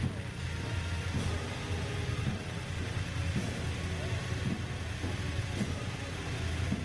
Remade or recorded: recorded